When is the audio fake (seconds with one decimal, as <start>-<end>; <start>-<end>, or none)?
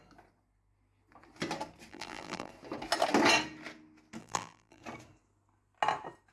1.9-2.5; 4.2-4.8